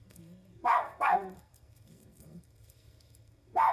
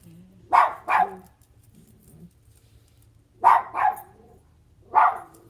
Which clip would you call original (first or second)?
second